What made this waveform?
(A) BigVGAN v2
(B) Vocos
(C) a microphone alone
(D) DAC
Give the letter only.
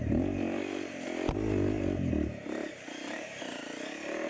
C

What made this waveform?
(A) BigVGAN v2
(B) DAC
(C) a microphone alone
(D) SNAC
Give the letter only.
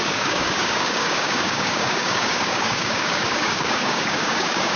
B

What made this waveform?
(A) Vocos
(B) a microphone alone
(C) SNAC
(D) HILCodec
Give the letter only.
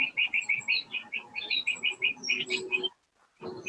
B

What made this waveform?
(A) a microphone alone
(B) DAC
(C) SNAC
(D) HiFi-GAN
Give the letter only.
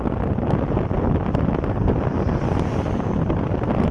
A